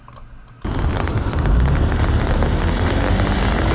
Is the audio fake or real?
real